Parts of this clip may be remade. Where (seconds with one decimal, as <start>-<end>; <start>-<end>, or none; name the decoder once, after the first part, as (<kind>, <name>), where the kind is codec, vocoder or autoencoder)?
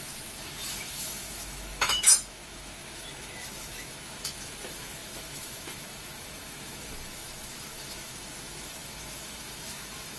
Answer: 0.0-10.2 (autoencoder, DAC-VAE)